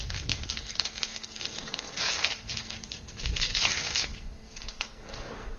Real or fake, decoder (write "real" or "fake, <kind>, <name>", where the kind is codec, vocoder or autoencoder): fake, codec, SNAC